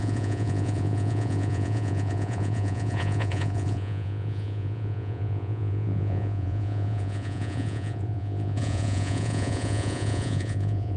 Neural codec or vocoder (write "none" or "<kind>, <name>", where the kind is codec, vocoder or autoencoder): vocoder, Vocos